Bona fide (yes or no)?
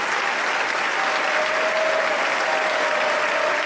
yes